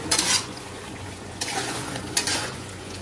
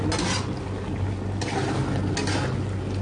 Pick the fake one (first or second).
first